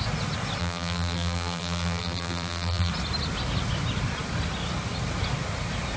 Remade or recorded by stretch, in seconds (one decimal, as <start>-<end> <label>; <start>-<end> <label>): 0.0-0.6 recorded; 0.6-2.9 remade; 2.9-6.0 recorded